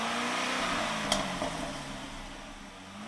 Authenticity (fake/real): real